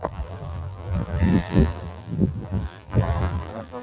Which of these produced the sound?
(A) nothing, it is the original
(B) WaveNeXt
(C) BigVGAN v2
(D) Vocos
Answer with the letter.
C